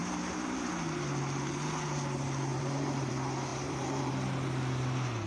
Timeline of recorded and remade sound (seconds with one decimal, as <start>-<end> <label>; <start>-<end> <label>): 0.0-0.7 remade; 0.7-2.5 recorded; 2.5-3.1 remade; 3.1-3.5 recorded; 3.5-4.1 remade; 4.1-5.3 recorded